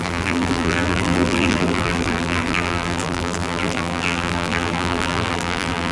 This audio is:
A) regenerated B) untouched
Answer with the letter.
A